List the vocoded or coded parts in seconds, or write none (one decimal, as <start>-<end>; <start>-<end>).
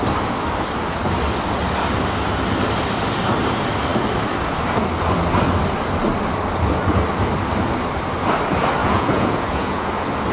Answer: 8.8-9.9